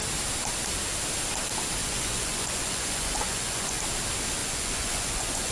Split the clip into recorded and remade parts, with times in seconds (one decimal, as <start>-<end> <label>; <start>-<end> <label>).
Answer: 0.0-1.8 recorded; 1.8-3.8 remade; 3.8-4.4 recorded; 4.4-5.5 remade